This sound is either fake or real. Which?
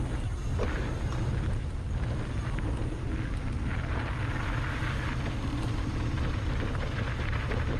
real